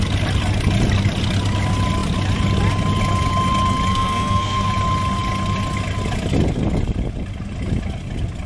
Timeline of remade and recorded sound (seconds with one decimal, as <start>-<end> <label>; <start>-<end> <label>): 0.0-3.9 recorded; 3.9-4.7 remade; 4.7-8.5 recorded